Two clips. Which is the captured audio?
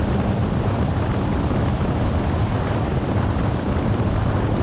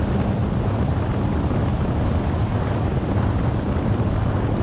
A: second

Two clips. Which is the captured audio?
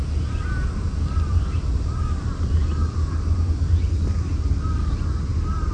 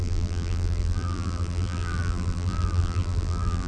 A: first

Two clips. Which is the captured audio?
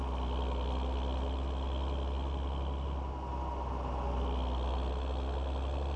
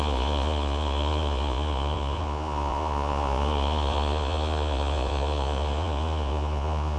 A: first